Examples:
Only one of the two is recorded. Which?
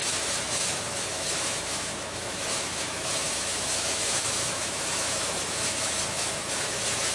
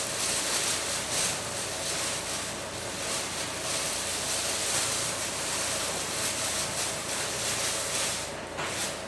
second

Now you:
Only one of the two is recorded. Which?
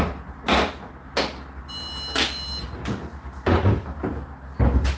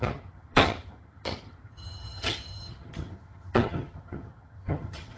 first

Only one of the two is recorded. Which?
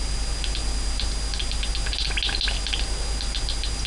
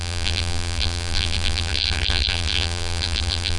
first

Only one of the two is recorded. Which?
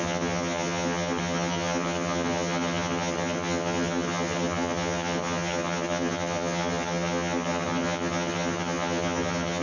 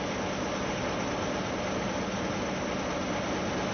second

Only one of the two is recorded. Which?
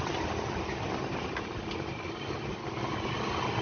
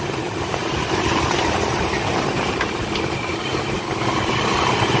first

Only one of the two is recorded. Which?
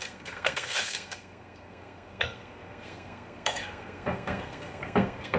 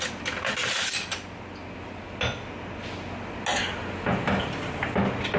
second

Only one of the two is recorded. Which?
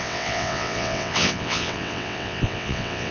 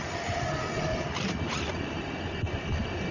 second